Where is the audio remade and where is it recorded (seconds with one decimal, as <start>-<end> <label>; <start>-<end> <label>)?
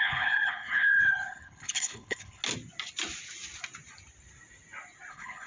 0.0-2.4 remade; 2.4-5.1 recorded; 5.1-5.5 remade